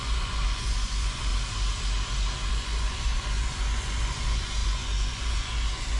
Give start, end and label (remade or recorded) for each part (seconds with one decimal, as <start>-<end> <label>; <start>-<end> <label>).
0.0-1.3 remade; 1.3-2.5 recorded; 2.5-6.0 remade